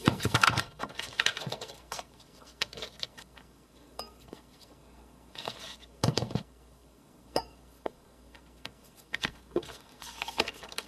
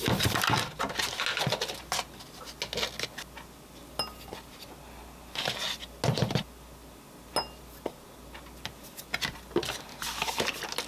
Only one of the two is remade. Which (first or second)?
first